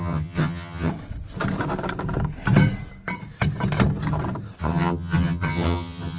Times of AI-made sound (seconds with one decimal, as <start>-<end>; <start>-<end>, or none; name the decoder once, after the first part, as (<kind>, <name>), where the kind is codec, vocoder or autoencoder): 0.0-0.9 (vocoder, HiFi-GAN); 4.6-6.2